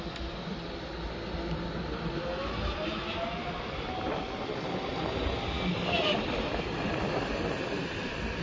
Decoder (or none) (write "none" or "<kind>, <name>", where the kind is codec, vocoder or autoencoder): none